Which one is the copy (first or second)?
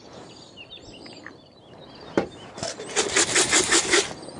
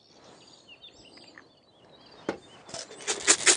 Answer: first